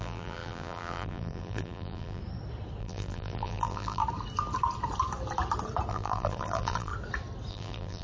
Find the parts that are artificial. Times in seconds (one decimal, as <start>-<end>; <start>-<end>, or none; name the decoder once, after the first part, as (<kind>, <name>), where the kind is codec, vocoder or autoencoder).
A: 0.0-2.2 (vocoder, BigVGAN v2); 2.8-4.0; 5.9-6.9; 7.5-8.0